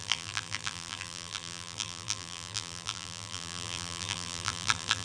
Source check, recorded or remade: remade